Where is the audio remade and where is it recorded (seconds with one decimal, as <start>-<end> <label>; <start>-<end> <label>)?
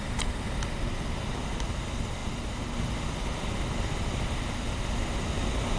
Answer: 0.0-5.8 recorded